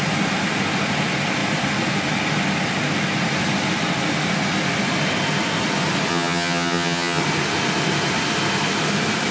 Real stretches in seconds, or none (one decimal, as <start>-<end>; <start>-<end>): 0.0-6.1; 7.2-9.3